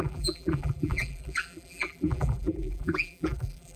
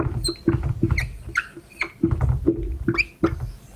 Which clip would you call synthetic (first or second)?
first